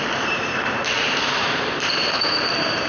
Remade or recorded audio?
remade